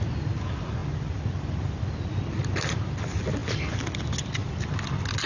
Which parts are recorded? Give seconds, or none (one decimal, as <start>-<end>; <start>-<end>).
0.0-5.3